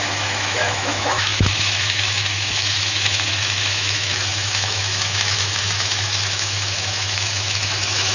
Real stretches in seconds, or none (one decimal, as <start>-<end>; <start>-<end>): none